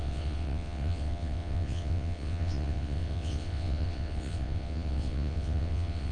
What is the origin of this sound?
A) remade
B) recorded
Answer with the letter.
A